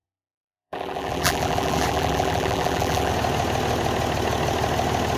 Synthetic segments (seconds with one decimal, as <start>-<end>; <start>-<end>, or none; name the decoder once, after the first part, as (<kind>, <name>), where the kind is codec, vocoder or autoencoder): 0.0-3.1 (vocoder, BigVGAN v2)

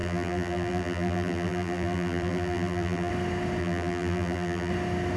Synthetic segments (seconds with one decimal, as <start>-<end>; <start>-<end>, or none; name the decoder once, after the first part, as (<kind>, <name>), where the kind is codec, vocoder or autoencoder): 0.0-3.1 (vocoder, BigVGAN v2); 3.6-4.7